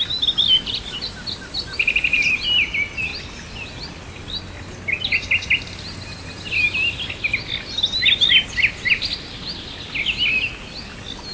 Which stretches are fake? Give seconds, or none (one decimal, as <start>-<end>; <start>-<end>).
none